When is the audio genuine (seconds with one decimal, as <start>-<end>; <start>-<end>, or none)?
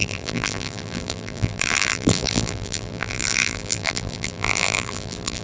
none